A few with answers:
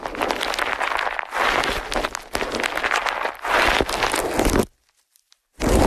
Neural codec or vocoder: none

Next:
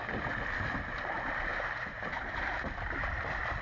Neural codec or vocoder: none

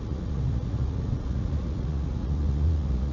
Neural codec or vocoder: vocoder, Vocos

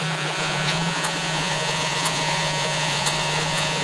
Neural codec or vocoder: vocoder, Vocos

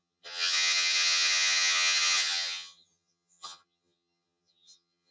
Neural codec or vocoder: vocoder, HiFi-GAN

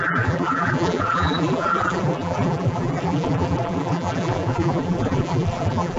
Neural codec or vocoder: vocoder, BigVGAN v2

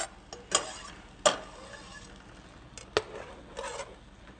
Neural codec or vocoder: none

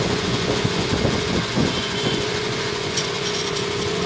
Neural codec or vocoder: vocoder, Vocos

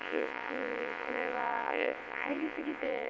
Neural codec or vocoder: vocoder, Vocos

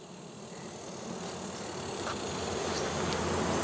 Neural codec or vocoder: none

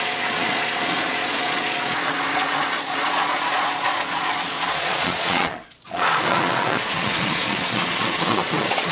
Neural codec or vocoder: vocoder, Vocos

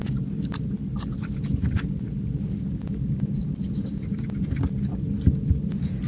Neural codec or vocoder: none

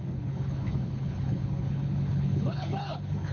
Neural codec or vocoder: codec, HILCodec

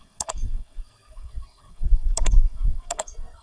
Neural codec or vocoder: codec, SNAC